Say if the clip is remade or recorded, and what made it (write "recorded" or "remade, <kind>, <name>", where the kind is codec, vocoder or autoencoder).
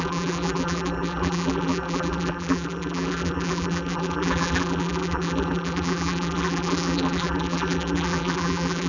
remade, vocoder, BigVGAN v2